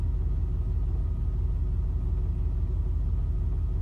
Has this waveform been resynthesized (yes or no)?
no